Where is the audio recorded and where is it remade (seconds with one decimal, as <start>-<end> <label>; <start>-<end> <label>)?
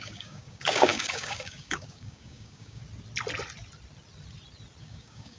0.0-2.8 remade; 2.8-4.8 recorded; 4.8-5.4 remade